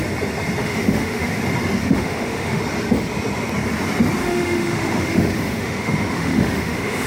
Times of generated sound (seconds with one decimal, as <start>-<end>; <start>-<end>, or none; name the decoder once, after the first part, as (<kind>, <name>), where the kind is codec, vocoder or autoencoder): 0.6-1.4 (autoencoder, DAC-VAE); 1.8-2.6; 4.2-7.1